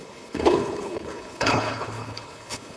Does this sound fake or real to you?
fake